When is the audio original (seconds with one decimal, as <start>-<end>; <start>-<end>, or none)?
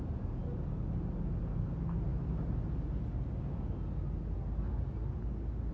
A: 0.0-5.7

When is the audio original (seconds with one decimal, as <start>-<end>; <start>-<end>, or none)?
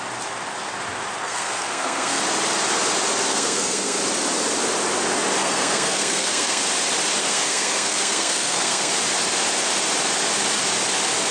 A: 0.0-1.2; 2.2-3.3; 4.0-5.4; 6.6-7.2; 8.9-11.3